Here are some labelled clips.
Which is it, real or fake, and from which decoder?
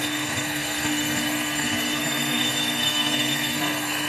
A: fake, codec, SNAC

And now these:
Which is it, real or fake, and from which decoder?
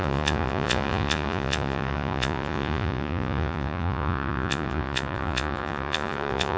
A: fake, vocoder, Vocos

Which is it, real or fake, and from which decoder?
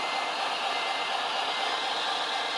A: real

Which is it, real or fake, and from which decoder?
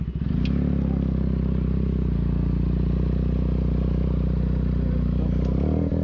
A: real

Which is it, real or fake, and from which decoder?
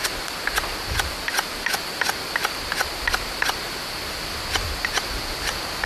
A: real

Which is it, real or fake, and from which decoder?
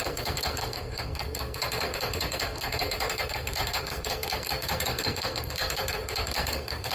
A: fake, codec, SNAC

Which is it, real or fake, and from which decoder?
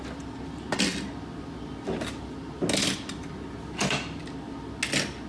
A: real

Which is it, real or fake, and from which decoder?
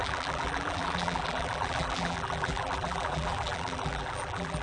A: fake, vocoder, BigVGAN v2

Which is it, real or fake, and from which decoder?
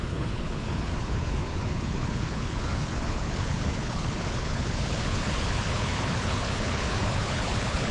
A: fake, codec, HILCodec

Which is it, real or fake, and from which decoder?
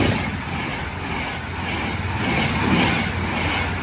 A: real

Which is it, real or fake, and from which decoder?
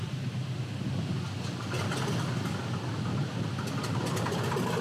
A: real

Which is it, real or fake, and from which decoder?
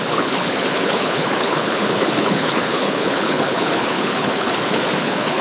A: fake, codec, HILCodec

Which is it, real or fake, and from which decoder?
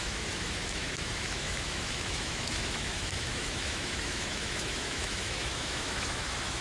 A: fake, autoencoder, DAC-VAE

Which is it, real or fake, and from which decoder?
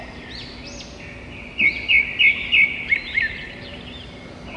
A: real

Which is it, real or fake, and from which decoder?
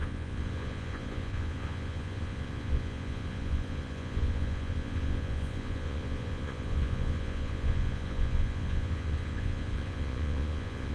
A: fake, vocoder, Vocos